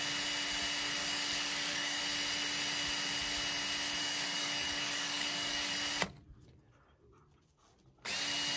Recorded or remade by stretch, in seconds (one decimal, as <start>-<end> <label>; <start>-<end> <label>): 0.0-1.0 recorded; 1.0-2.0 remade; 2.0-4.0 recorded; 4.0-5.7 remade; 5.7-8.6 recorded